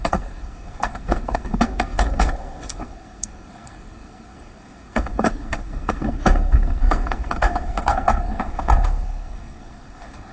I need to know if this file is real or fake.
fake